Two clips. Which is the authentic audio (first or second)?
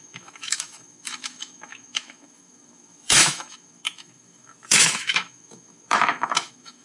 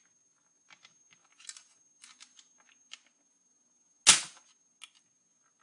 second